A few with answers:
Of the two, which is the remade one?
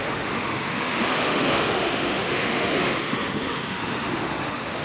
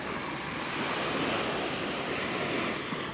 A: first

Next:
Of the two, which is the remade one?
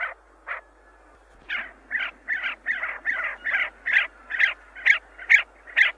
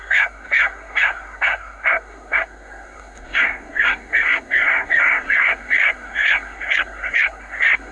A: second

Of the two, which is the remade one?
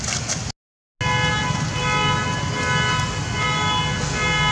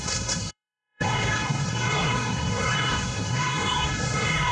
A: second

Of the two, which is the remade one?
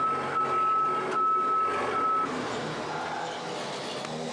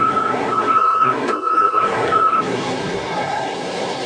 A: second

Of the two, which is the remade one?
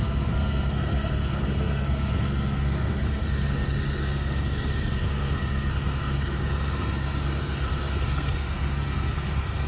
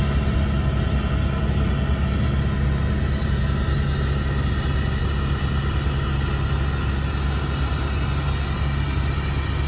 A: first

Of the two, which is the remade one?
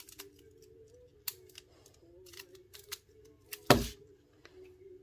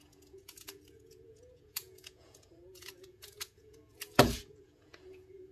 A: second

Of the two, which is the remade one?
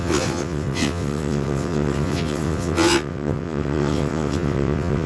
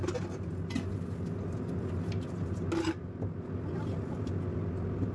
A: first